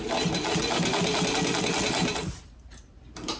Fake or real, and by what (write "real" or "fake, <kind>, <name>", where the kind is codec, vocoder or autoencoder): real